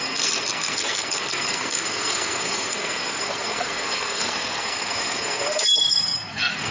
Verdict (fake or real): fake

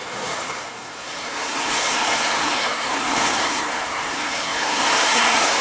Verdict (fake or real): fake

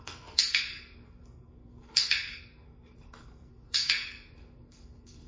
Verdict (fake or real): fake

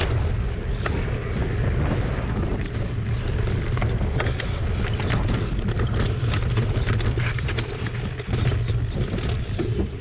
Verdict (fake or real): real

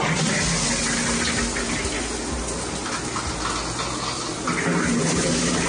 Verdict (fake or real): real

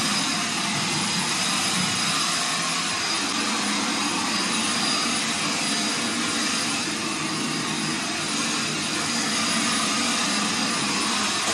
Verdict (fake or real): real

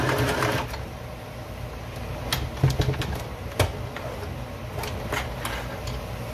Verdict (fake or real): real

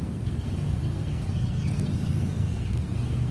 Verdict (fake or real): fake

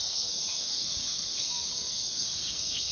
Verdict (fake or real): fake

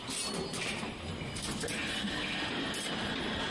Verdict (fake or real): real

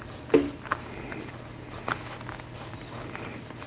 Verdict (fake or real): real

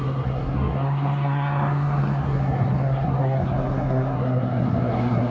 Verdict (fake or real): fake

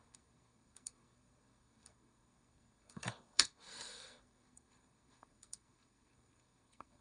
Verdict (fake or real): fake